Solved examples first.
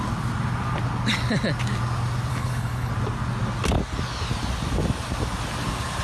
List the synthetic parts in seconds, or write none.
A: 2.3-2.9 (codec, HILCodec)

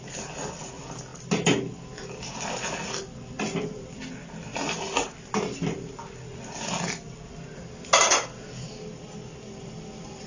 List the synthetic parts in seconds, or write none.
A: none

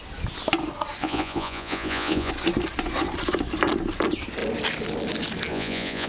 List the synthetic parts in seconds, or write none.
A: 1.0-2.3 (vocoder, Vocos); 5.5-6.1